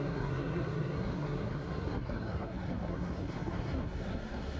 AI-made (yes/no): yes